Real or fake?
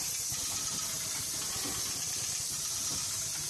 real